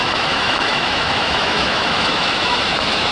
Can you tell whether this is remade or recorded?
remade